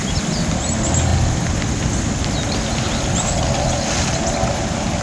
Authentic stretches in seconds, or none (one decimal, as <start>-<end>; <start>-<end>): 0.0-5.0